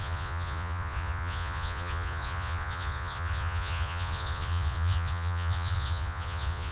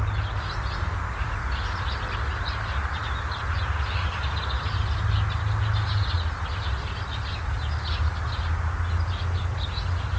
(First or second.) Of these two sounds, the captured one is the second